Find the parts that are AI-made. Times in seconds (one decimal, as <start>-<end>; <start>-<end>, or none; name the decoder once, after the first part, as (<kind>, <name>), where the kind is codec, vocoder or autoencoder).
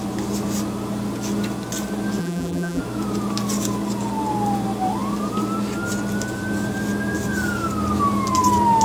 2.2-2.8 (vocoder, BigVGAN v2)